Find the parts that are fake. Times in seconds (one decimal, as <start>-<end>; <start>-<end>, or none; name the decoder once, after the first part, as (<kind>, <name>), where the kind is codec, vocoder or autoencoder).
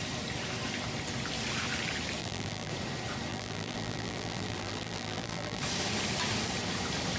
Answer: 2.2-2.7 (vocoder, BigVGAN v2); 3.3-5.6